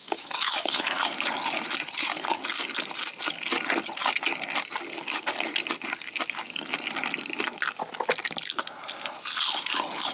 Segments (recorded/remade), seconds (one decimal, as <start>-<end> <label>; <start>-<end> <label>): 0.0-0.9 remade; 0.9-10.1 recorded